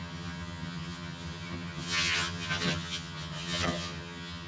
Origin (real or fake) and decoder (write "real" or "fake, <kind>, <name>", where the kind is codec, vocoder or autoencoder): fake, vocoder, HiFi-GAN